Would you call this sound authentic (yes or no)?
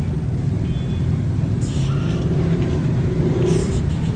yes